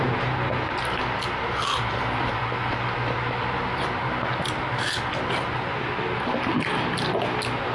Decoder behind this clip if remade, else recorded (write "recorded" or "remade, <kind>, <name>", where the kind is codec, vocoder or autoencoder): recorded